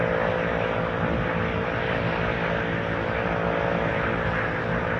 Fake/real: real